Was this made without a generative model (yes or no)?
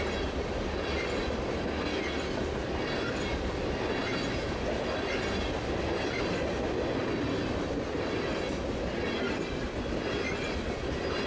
yes